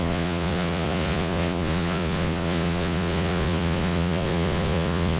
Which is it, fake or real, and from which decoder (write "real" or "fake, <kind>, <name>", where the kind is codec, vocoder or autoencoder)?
fake, vocoder, Vocos